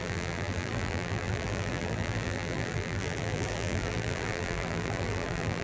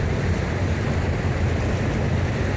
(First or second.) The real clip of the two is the second